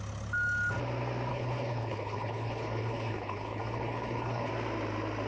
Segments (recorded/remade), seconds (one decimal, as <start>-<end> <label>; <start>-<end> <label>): 0.0-1.3 recorded; 1.3-4.5 remade; 4.5-5.3 recorded